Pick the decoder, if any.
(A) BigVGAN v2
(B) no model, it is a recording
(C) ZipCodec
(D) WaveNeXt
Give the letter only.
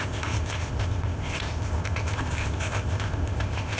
C